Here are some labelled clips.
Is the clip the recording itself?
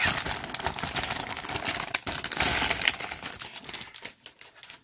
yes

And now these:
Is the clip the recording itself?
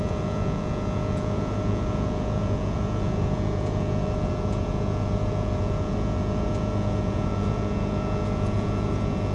no